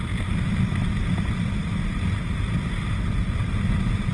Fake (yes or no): no